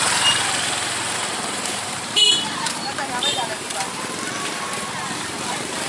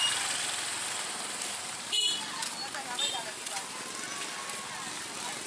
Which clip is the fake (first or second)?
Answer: first